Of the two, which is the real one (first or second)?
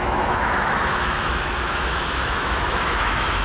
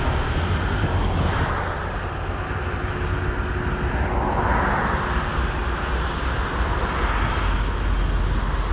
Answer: second